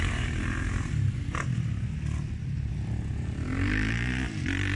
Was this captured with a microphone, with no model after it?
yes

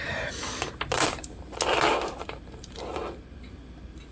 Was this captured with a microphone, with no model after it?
yes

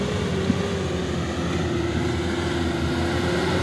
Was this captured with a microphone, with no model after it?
yes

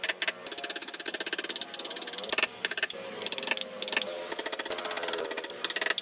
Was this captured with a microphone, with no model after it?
yes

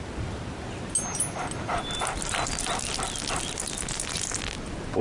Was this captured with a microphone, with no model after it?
yes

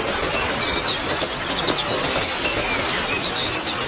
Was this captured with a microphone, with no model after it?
yes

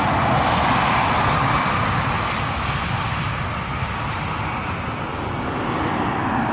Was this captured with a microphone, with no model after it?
yes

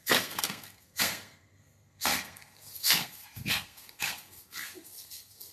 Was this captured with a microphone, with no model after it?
no